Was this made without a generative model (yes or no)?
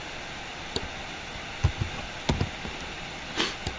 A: yes